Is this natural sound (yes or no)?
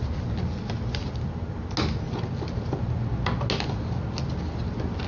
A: yes